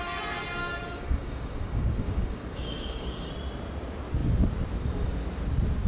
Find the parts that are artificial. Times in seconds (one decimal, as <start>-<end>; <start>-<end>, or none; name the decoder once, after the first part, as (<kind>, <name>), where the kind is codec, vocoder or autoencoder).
0.6-3.3 (codec, DAC)